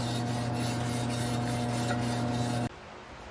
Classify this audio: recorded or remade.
recorded